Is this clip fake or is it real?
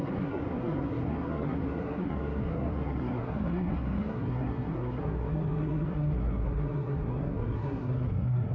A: fake